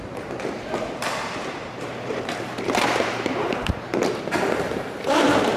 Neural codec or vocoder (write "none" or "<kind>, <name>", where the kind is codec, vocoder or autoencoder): vocoder, BigVGAN v2